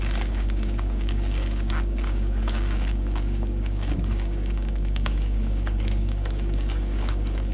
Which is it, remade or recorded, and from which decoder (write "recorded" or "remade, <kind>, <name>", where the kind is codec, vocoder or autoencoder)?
remade, codec, DAC